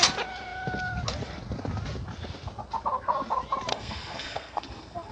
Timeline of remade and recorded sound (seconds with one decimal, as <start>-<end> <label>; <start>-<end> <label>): 0.0-3.7 recorded; 3.7-5.1 remade